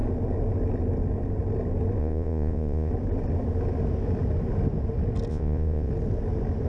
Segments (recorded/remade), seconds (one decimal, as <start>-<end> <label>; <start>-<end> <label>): 0.0-2.0 recorded; 2.0-2.9 remade; 2.9-5.3 recorded; 5.3-5.9 remade; 5.9-6.7 recorded